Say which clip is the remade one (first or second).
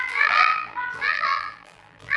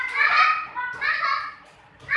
first